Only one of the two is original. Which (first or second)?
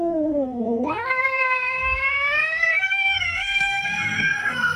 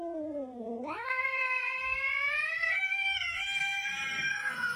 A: second